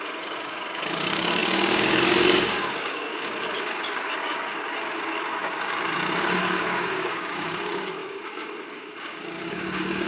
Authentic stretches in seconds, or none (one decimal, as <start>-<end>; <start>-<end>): none

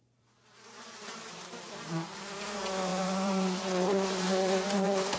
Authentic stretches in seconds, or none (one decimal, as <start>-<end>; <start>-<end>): none